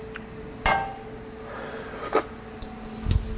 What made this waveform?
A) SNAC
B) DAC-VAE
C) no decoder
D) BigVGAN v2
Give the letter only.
C